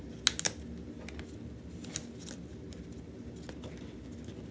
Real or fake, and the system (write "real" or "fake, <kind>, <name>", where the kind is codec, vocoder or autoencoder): real